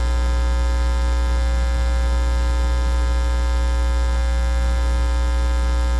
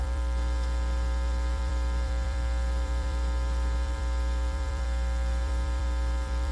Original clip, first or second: first